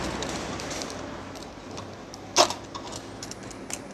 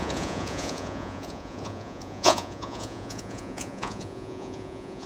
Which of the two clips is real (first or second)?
first